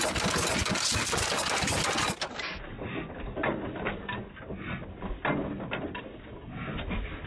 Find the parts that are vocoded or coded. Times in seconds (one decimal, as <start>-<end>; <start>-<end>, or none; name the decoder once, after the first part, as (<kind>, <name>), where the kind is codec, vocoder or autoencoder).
none